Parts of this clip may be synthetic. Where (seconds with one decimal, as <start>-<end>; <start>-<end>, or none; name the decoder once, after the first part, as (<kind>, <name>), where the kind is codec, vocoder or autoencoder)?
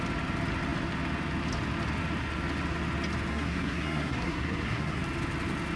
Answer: 3.3-5.0 (codec, SNAC)